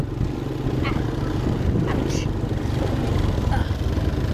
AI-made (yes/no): no